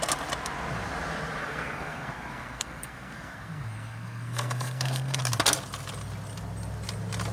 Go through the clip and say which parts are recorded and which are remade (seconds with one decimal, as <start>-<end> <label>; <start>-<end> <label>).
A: 0.0-1.4 recorded; 1.4-5.2 remade; 5.2-7.3 recorded